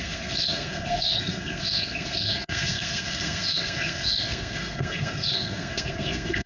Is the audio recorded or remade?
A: remade